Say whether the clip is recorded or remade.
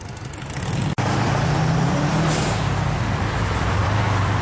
remade